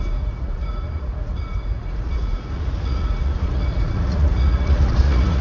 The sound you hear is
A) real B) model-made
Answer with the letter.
B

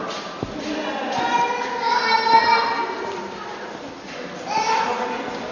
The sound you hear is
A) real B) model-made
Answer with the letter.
A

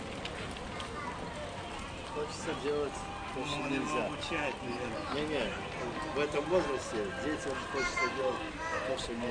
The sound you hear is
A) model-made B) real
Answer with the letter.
B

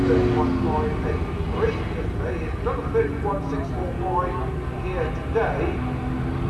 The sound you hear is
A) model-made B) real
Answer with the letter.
B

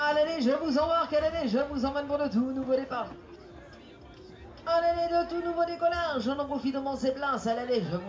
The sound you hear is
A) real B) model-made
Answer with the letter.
A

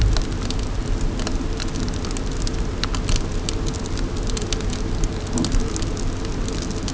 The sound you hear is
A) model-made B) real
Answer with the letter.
B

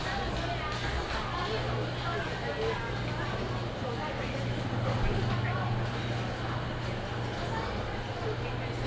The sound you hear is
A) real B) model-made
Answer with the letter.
A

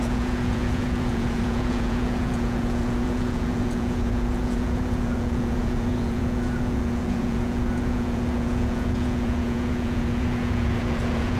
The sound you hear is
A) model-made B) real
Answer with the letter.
A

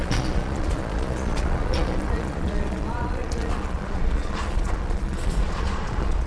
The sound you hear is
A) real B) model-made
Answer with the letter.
B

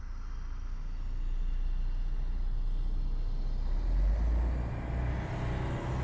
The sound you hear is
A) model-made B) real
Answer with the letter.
B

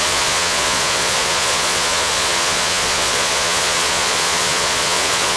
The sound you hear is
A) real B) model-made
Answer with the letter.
B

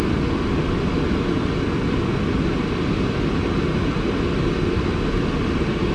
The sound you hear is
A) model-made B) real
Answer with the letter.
B